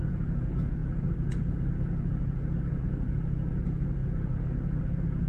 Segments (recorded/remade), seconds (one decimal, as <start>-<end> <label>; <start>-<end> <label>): 0.0-5.3 remade